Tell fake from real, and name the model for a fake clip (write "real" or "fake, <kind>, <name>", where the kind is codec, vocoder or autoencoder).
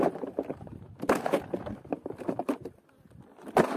real